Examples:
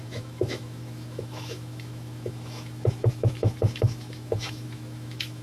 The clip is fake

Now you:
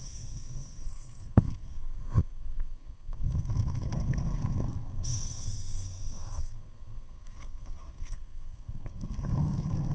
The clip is fake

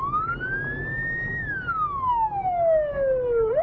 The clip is real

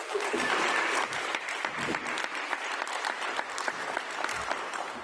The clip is fake